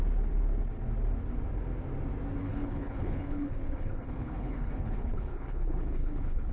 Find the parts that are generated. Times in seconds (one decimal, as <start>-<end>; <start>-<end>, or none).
2.4-6.5